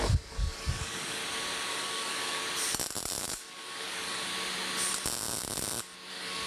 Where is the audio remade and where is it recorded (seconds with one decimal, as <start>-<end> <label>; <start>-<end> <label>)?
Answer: 0.0-1.2 remade; 1.2-1.7 recorded; 1.7-2.4 remade; 2.4-3.2 recorded; 3.2-4.3 remade; 4.3-6.1 recorded; 6.1-6.5 remade